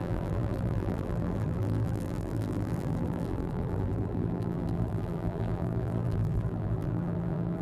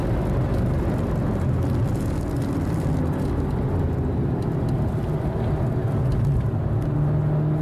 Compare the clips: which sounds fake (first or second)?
first